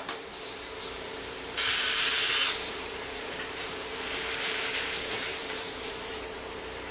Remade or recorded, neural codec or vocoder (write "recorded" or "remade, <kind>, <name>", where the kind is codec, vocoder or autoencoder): remade, vocoder, BigVGAN v2